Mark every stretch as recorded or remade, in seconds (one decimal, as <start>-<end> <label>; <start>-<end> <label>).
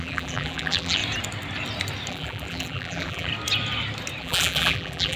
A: 0.0-1.0 remade; 1.0-2.1 recorded; 2.1-3.3 remade; 3.3-4.2 recorded; 4.2-5.2 remade